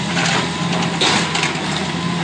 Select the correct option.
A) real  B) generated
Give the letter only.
A